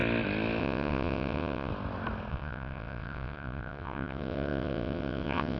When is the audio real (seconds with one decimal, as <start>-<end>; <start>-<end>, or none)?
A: 0.0-0.6; 1.7-2.3

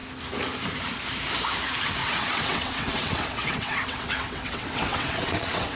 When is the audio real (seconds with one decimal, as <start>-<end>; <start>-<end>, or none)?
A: 0.0-2.0

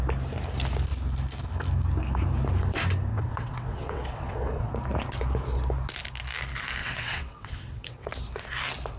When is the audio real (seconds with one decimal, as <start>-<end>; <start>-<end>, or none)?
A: 0.0-3.1; 4.7-6.8; 8.1-9.0

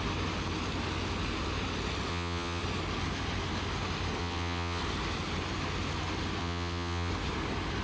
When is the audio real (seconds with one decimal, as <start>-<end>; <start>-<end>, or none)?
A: 0.0-2.1; 2.6-4.2; 4.8-6.4; 7.1-7.8